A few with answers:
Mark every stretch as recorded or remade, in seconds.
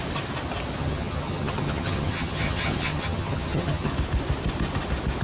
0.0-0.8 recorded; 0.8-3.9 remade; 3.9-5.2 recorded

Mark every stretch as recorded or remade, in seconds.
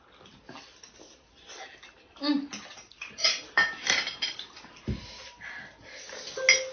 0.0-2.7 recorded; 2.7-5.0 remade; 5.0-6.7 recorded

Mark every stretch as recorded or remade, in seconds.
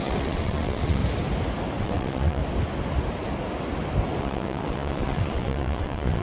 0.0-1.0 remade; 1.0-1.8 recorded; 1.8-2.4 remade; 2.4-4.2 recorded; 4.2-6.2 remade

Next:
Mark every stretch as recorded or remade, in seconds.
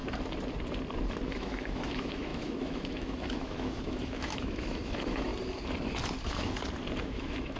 0.0-1.3 recorded; 1.3-5.3 remade; 5.3-7.0 recorded; 7.0-7.6 remade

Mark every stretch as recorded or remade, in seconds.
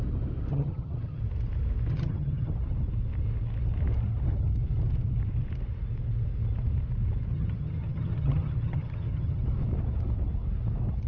0.0-0.5 recorded; 0.5-1.2 remade; 1.2-1.9 recorded; 1.9-2.5 remade; 2.5-7.3 recorded; 7.3-9.4 remade; 9.4-11.1 recorded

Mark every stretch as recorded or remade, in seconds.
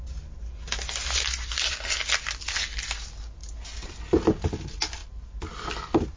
0.0-6.2 recorded